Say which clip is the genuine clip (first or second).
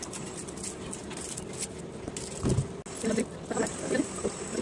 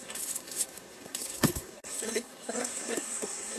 first